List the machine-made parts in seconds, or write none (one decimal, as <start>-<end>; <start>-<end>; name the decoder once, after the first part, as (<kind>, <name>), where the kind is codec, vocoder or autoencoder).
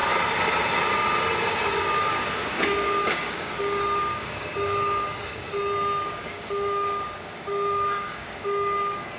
1.5-9.2 (codec, DAC)